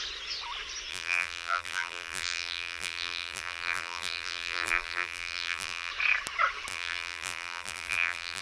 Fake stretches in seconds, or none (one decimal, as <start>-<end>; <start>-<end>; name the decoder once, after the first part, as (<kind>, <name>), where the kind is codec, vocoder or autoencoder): 0.9-5.9 (vocoder, BigVGAN v2); 6.7-8.4